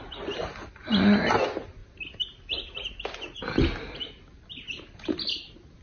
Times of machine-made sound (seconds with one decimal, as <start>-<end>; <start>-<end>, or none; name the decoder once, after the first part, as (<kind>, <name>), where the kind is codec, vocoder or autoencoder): none